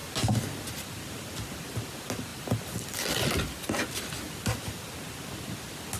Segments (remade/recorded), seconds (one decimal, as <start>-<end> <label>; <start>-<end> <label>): 0.0-6.0 recorded